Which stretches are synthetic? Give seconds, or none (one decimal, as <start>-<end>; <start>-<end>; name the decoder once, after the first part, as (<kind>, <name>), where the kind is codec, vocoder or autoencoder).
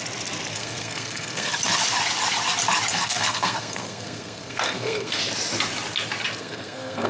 0.5-1.5 (codec, SNAC); 2.9-5.2; 6.4-7.1